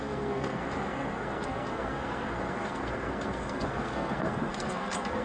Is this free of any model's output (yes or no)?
no